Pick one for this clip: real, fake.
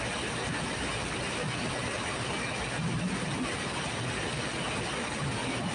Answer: real